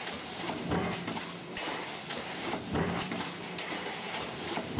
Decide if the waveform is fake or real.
fake